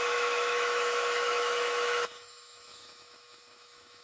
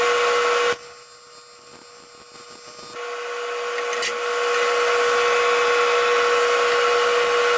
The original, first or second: second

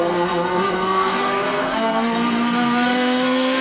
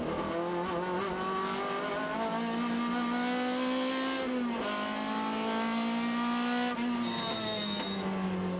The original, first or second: second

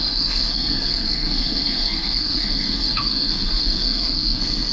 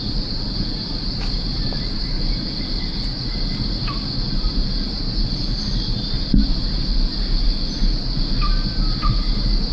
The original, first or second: second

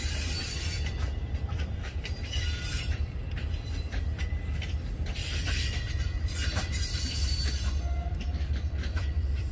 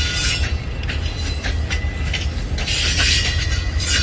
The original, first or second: second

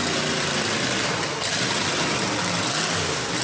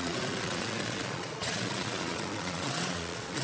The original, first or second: first